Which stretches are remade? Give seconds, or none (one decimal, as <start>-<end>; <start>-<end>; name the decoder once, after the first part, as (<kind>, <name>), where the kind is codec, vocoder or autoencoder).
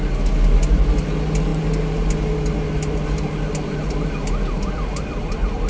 none